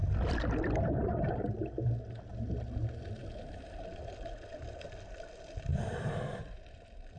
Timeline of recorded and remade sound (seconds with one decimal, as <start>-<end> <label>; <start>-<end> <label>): 0.0-7.2 recorded